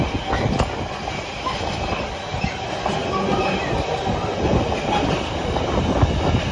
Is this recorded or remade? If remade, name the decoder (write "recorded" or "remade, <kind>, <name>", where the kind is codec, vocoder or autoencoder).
recorded